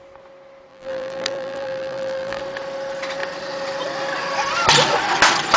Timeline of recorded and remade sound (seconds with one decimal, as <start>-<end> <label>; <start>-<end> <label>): 0.0-0.7 recorded; 0.7-2.4 remade; 2.4-5.6 recorded